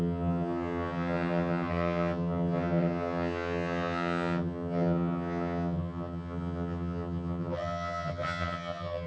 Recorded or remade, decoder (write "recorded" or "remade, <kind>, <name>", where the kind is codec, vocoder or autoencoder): remade, vocoder, HiFi-GAN